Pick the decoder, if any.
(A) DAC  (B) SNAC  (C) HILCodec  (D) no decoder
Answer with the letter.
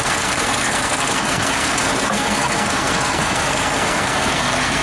B